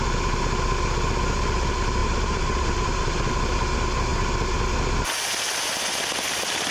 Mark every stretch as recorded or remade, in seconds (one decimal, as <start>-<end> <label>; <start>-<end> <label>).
0.0-2.0 recorded; 2.0-3.3 remade; 3.3-6.7 recorded